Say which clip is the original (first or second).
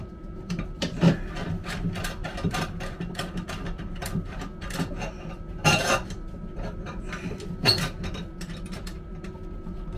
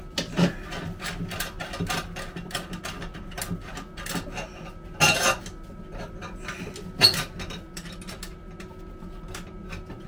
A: second